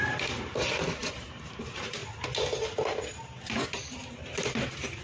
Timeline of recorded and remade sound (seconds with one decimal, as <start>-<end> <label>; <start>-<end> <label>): 0.0-2.0 remade; 2.0-3.7 recorded; 3.7-5.0 remade